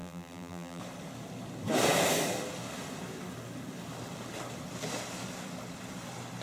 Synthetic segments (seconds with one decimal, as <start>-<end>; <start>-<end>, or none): 0.0-0.8